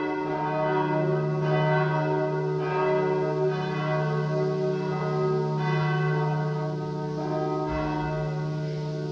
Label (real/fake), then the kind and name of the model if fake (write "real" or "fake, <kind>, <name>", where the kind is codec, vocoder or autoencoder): real